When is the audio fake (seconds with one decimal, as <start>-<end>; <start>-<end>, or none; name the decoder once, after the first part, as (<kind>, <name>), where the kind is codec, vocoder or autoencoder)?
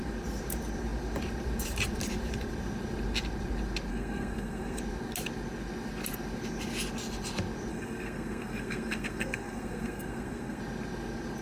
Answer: 3.9-4.8 (codec, SNAC); 7.7-10.6